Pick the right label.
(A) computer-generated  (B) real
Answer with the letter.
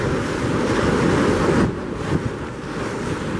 B